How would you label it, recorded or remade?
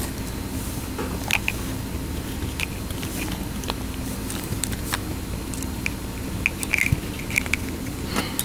recorded